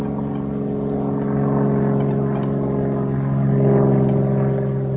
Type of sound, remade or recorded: recorded